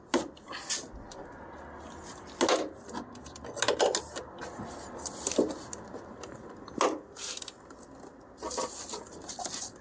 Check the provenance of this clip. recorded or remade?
recorded